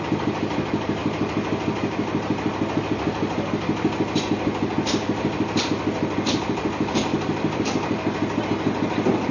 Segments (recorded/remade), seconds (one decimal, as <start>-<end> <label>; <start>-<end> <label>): 0.0-9.3 recorded